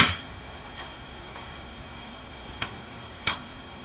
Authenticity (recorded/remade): remade